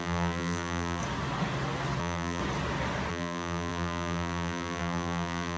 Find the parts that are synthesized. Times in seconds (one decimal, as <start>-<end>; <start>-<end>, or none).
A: 0.0-1.0; 2.0-2.4; 3.1-5.6

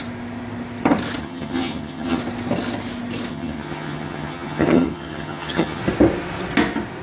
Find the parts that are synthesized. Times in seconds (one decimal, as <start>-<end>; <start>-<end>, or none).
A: 1.2-2.2; 3.3-5.8